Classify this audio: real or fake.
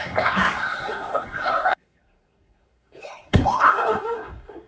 fake